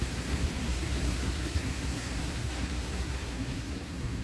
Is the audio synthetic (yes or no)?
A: yes